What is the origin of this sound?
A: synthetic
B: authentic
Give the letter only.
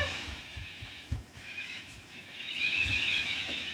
A